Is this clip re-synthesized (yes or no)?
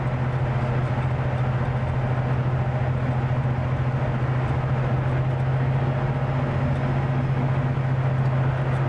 no